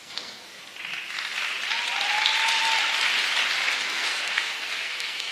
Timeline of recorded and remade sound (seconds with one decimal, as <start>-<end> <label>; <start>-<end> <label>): 0.0-0.6 remade; 0.6-3.8 recorded; 3.8-5.3 remade